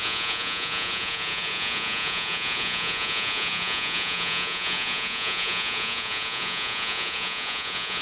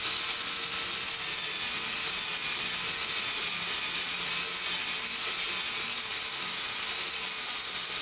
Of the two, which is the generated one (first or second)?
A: first